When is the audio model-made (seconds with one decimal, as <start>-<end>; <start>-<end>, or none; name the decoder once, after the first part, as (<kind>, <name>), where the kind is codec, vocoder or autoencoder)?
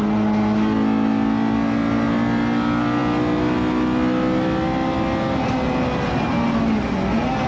none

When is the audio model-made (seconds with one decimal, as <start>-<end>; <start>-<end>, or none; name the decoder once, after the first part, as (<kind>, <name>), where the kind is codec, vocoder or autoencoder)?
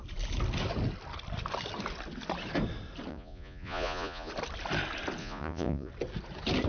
3.1-4.3 (vocoder, Vocos); 5.2-5.9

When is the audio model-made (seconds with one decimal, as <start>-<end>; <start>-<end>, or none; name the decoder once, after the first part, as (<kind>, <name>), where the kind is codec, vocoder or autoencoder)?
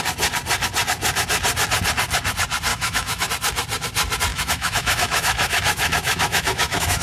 2.7-3.3 (autoencoder, DAC-VAE); 4.3-7.0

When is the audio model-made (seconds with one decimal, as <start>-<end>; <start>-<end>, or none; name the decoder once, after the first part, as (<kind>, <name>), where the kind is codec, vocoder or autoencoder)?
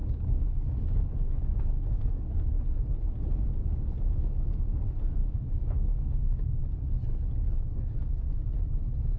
0.0-2.8 (codec, DAC); 5.2-6.6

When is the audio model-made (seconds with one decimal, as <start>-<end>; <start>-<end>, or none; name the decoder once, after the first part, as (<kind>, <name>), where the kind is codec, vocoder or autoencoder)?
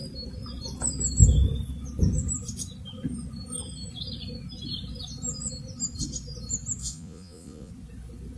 6.8-7.7 (vocoder, Vocos)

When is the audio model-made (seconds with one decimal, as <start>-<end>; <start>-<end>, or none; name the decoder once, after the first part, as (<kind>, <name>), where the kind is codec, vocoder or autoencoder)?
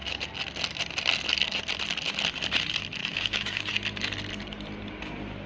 3.0-3.7 (codec, DAC)